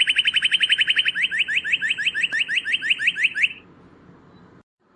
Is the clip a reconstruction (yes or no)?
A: no